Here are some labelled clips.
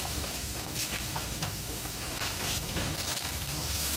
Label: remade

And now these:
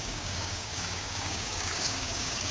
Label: remade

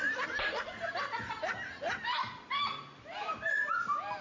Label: recorded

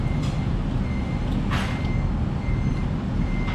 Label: recorded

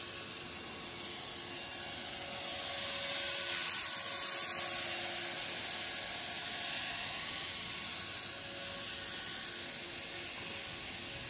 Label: recorded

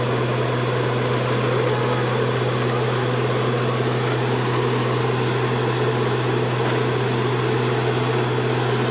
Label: recorded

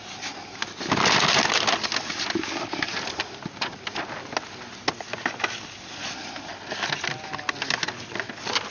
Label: recorded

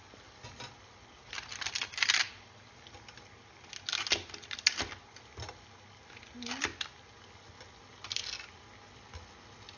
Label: recorded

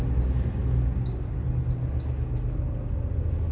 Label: recorded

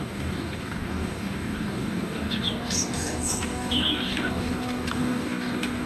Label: remade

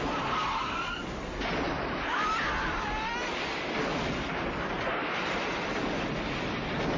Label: recorded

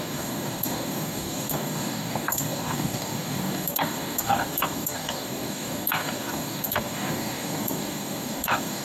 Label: remade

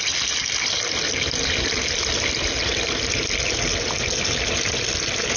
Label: recorded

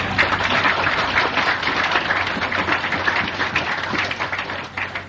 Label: recorded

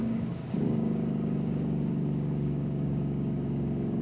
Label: remade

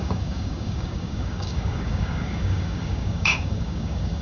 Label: remade